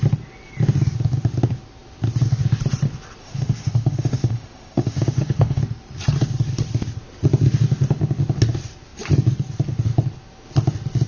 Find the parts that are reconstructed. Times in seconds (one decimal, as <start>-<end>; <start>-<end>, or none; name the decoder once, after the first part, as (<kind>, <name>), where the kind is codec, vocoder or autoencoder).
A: 3.2-5.6 (autoencoder, DAC-VAE)